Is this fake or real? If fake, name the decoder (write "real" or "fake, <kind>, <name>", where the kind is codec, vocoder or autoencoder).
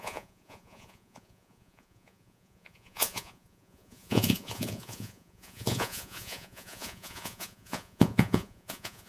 fake, vocoder, Vocos